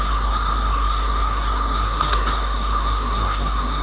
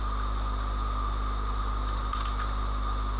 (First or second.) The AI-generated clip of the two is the first